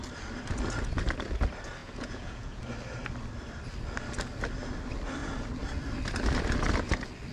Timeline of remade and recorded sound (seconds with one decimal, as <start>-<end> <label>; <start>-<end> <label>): 0.0-1.8 recorded; 1.8-2.6 remade; 2.6-7.3 recorded